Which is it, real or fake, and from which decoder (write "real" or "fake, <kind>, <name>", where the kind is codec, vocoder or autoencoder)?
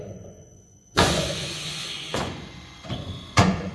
fake, vocoder, Vocos